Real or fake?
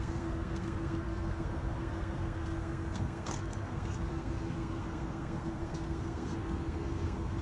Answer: fake